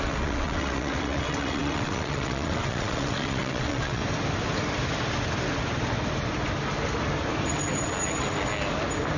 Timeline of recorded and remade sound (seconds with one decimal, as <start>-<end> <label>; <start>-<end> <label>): 0.0-4.0 remade; 4.0-9.2 recorded